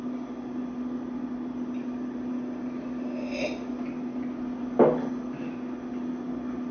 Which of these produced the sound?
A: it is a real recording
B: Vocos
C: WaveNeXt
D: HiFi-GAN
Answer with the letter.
A